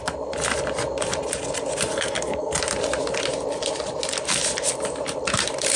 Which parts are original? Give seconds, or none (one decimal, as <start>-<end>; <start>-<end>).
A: 0.0-1.9; 2.6-5.8